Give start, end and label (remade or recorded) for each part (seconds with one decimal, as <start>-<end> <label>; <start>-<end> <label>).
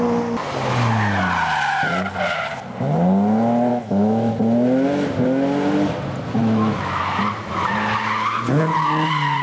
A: 0.0-3.7 recorded; 3.7-4.3 remade; 4.3-6.4 recorded; 6.4-7.0 remade; 7.0-9.4 recorded